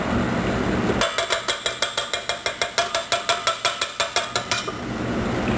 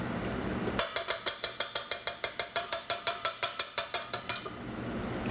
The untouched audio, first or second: first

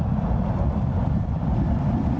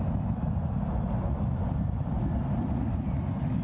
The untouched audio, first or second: second